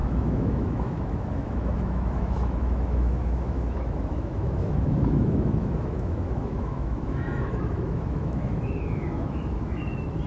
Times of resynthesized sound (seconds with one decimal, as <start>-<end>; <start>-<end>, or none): 0.0-10.3